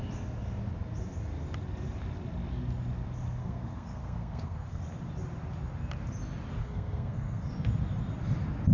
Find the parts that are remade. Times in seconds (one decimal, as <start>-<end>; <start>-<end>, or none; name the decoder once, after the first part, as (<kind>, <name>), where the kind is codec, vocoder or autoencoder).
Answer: 3.4-4.8 (codec, SNAC); 6.6-7.5